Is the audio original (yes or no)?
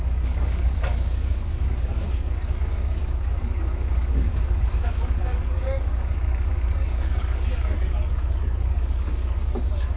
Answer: no